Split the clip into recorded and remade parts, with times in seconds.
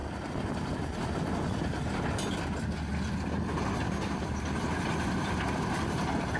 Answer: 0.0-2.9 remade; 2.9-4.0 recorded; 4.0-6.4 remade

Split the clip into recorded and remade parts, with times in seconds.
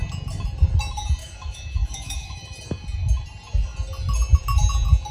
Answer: 0.0-1.2 recorded; 1.2-2.4 remade; 2.4-5.1 recorded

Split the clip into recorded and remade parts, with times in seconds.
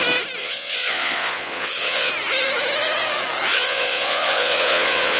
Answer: 0.0-0.4 recorded; 0.4-2.1 remade; 2.1-3.5 recorded; 3.5-5.2 remade